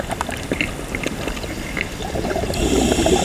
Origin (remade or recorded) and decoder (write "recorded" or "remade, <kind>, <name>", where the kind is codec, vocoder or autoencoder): recorded